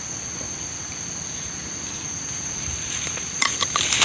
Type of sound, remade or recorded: recorded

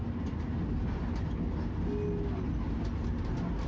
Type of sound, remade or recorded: recorded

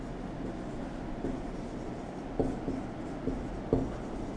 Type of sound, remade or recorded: recorded